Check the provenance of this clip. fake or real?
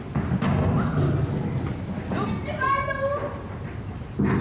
real